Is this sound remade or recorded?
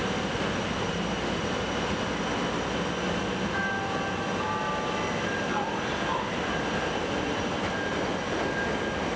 recorded